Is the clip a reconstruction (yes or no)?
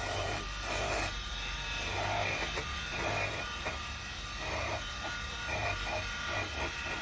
yes